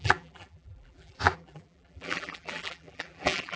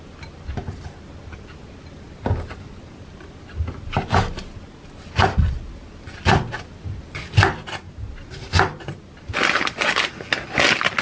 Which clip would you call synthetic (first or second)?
first